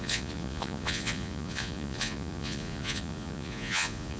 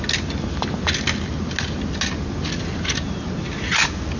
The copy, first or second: first